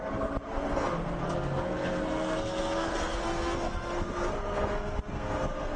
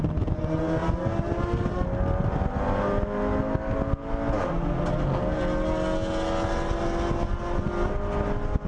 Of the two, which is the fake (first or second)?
first